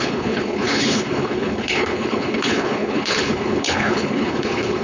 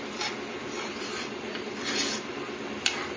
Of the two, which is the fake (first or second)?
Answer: first